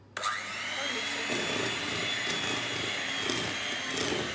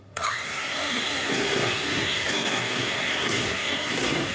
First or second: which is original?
first